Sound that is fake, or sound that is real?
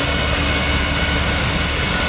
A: real